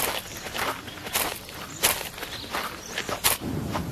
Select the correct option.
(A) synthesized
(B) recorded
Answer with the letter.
B